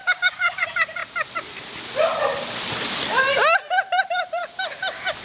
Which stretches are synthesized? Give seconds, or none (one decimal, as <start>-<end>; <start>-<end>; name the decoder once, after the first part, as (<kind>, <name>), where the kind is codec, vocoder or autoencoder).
0.0-0.6 (codec, DAC)